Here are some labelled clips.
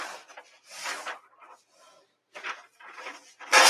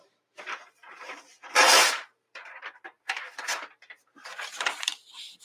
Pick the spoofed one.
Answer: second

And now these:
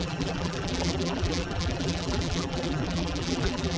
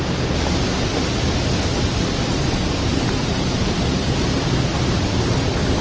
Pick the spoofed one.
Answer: first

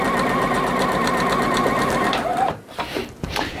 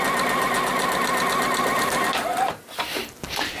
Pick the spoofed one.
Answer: first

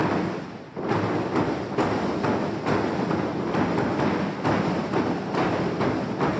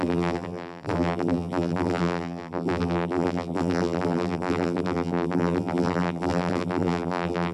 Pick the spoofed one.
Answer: second